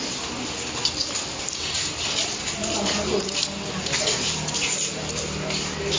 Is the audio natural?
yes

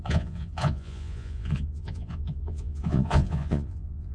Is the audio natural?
no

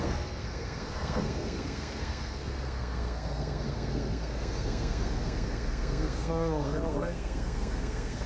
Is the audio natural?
no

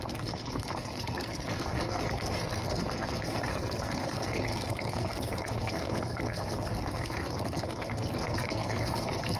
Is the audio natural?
no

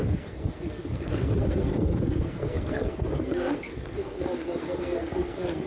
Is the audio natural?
no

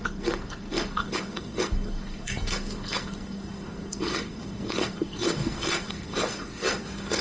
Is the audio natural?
no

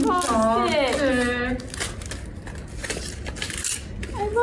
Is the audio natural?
yes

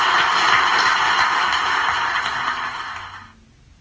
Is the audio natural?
yes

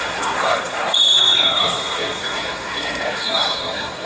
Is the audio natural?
no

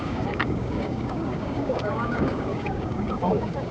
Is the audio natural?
no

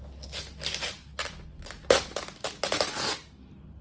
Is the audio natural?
yes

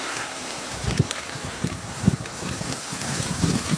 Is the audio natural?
no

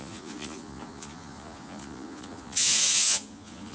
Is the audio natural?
no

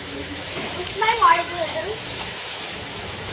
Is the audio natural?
no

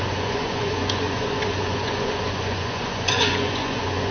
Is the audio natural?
no